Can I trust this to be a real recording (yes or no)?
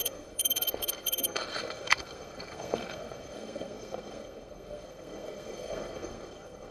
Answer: no